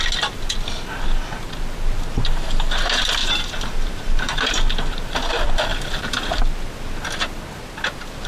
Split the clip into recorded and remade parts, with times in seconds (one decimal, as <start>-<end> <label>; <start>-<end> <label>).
0.0-3.2 recorded; 3.2-4.5 remade; 4.5-5.7 recorded; 5.7-6.4 remade; 6.4-8.3 recorded